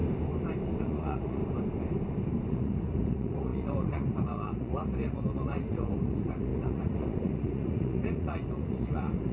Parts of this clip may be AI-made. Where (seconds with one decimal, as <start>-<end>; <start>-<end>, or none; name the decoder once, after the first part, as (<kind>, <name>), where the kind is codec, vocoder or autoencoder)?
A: 0.8-1.4 (vocoder, Vocos); 2.5-9.3